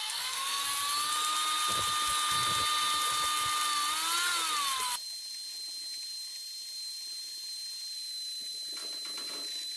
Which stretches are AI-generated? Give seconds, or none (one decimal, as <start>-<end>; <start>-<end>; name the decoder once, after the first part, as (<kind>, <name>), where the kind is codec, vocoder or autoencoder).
0.0-0.6 (codec, SNAC)